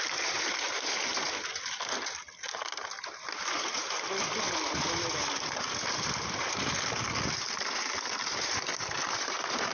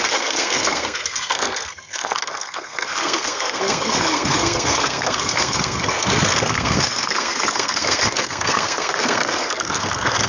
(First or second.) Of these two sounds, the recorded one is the first